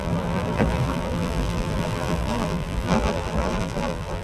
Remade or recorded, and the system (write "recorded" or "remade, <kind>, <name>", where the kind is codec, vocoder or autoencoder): remade, vocoder, BigVGAN v2